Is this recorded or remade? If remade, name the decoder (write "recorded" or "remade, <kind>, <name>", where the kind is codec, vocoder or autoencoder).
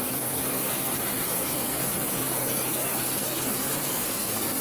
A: remade, codec, SNAC